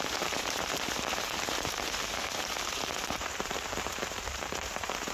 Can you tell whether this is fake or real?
fake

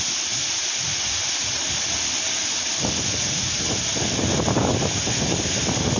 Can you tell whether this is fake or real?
real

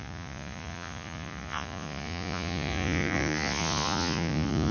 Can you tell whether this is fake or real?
fake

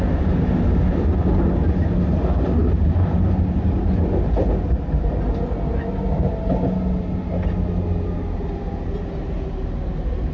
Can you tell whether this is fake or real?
real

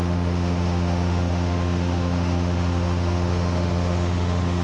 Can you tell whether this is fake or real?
fake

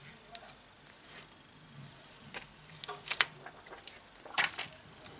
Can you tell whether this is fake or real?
real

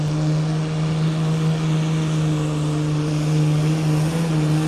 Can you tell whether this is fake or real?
real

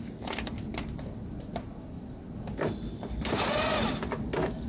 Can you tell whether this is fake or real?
real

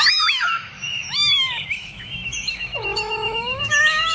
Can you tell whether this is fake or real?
fake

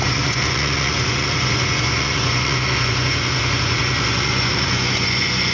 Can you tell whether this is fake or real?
fake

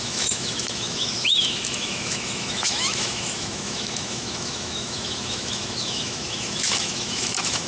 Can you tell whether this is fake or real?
fake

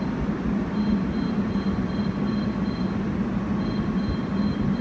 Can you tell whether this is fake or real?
real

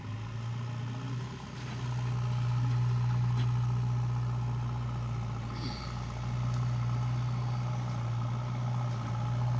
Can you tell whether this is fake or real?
real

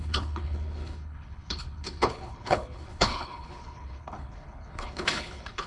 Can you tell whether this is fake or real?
fake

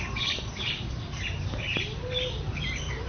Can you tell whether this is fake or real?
real